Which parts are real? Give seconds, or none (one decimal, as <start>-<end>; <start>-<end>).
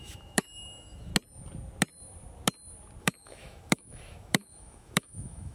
1.1-3.0